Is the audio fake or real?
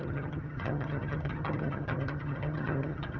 fake